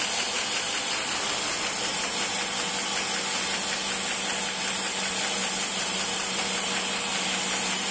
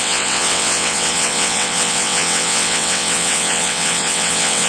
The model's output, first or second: second